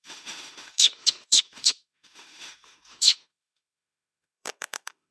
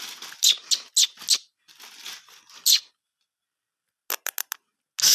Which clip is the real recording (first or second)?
second